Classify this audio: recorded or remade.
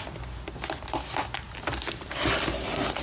recorded